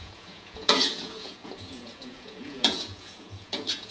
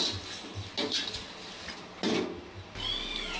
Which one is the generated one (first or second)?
first